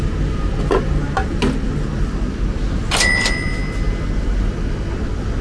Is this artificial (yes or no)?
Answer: no